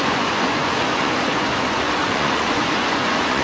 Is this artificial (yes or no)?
yes